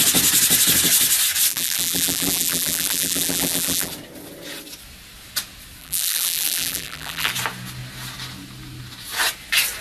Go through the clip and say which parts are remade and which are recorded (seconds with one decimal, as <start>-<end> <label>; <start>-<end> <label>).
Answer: 0.0-1.5 recorded; 1.5-3.9 remade; 3.9-5.8 recorded; 5.8-7.3 remade; 7.3-9.8 recorded